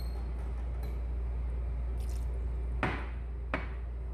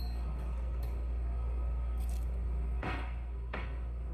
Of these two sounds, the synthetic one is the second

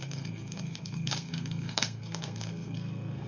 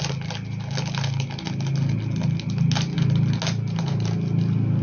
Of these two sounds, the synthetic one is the first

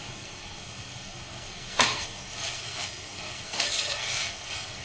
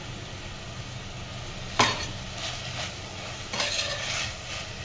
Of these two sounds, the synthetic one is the first